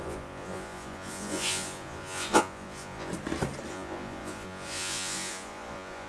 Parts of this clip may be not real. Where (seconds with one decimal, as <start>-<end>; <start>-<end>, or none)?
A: 0.0-3.1; 3.7-6.1